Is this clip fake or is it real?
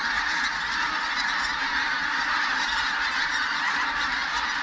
real